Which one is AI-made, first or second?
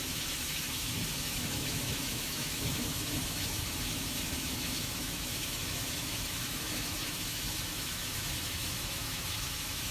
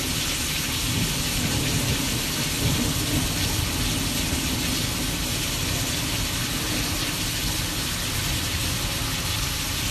first